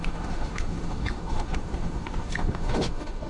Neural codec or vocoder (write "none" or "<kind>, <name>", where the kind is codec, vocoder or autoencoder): autoencoder, DAC-VAE